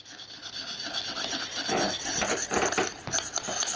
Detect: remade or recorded recorded